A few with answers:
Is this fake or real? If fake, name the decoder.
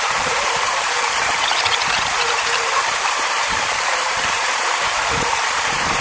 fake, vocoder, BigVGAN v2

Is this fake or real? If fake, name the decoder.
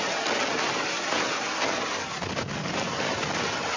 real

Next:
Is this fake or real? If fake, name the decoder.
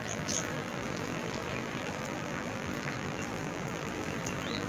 fake, vocoder, BigVGAN v2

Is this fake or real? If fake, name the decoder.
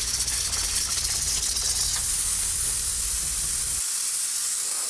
real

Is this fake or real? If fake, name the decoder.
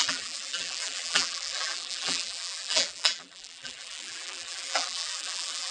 fake, vocoder, BigVGAN v2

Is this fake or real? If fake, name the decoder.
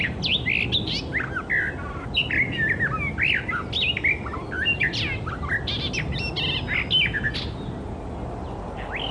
real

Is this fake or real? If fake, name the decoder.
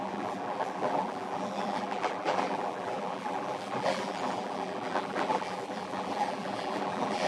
fake, vocoder, BigVGAN v2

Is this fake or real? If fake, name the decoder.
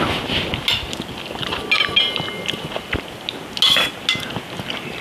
real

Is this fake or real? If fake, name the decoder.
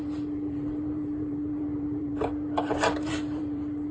fake, vocoder, BigVGAN v2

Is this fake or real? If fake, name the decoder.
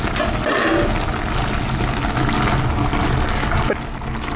real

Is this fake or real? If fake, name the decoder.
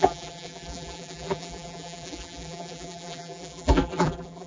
fake, vocoder, BigVGAN v2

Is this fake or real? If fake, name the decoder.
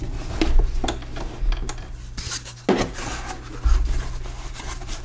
real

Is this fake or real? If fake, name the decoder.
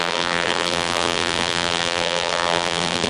fake, vocoder, BigVGAN v2